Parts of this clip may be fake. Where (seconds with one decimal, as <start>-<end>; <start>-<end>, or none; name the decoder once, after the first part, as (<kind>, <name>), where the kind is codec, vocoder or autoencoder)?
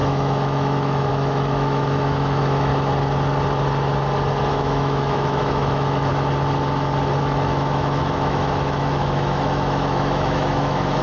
0.0-2.7 (autoencoder, DAC-VAE); 4.5-6.1; 7.2-11.0